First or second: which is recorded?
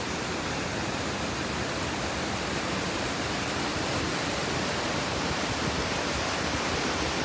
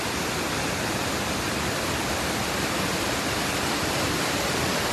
first